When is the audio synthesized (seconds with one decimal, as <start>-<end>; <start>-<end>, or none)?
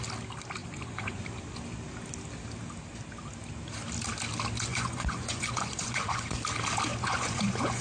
0.6-1.2; 4.7-6.4; 6.9-7.8